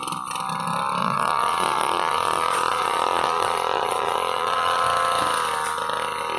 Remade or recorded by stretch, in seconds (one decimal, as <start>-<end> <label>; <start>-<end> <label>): 0.0-1.0 recorded; 1.0-4.8 remade; 4.8-6.4 recorded